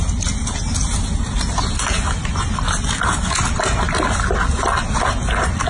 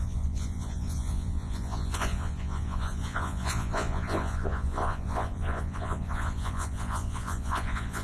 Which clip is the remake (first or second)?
second